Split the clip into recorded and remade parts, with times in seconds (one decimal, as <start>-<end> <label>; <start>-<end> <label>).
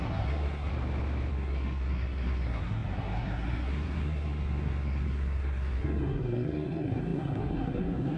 0.0-0.7 remade; 0.7-1.3 recorded; 1.3-8.2 remade